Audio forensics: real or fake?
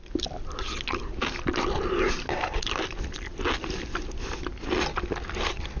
real